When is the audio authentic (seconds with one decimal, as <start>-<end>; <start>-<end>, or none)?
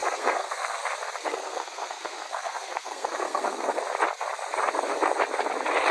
0.8-1.3; 3.8-5.9